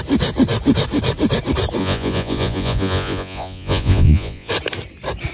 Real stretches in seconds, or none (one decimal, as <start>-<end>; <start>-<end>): 0.0-1.8; 4.5-5.3